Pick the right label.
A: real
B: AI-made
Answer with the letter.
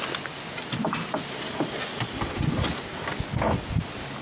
A